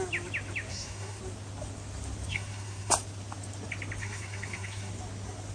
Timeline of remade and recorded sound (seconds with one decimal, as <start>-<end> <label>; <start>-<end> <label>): 0.0-0.7 recorded; 0.7-1.2 remade; 1.2-2.3 recorded; 2.3-2.9 remade; 2.9-4.0 recorded; 4.0-4.9 remade; 4.9-5.5 recorded